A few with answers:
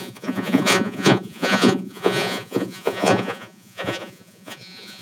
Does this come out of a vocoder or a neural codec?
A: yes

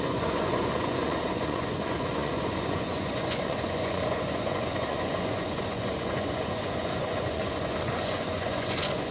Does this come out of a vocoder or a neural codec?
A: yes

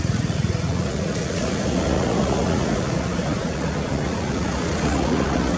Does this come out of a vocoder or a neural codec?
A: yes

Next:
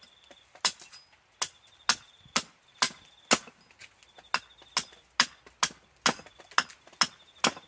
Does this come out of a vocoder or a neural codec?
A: no